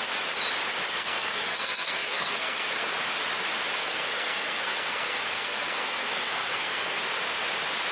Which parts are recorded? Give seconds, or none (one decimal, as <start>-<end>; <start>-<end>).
0.0-0.9; 2.9-3.8; 7.0-7.9